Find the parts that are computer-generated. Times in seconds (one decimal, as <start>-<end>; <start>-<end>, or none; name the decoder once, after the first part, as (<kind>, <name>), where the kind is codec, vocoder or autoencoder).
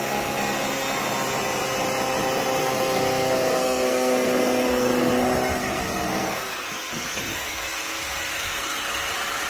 2.6-5.1 (codec, SNAC); 5.6-9.1